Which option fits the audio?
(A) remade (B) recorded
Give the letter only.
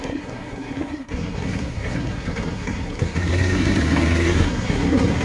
A